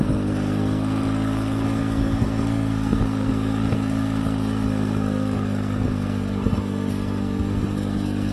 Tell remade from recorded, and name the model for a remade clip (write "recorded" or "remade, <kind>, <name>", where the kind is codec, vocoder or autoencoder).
remade, codec, SNAC